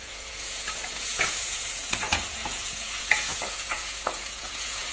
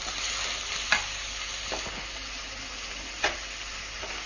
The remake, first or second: first